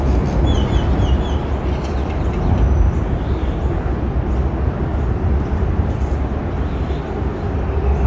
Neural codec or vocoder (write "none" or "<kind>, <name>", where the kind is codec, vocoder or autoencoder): none